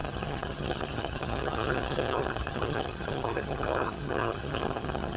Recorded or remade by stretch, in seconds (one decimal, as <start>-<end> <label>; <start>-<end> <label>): 0.0-5.2 remade